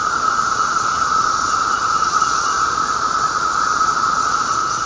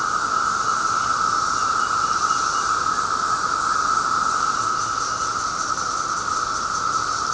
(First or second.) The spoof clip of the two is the first